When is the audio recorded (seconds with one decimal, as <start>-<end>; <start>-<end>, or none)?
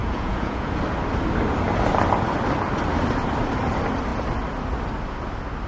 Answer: 0.7-5.7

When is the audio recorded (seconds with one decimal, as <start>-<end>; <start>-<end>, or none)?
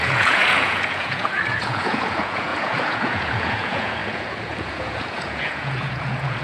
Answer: none